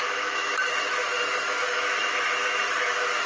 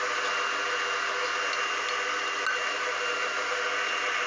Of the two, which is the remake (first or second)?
first